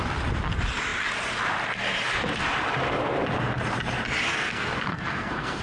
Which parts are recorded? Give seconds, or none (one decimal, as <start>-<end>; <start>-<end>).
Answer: 0.0-4.3